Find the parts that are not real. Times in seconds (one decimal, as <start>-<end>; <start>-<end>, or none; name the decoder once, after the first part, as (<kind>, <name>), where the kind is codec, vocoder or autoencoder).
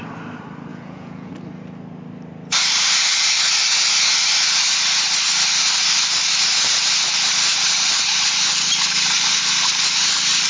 0.7-1.3 (vocoder, Vocos)